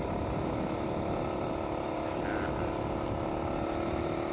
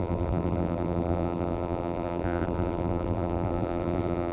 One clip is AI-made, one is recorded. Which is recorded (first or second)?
first